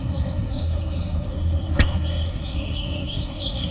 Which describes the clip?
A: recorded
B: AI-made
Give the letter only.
B